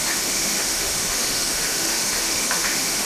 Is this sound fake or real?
fake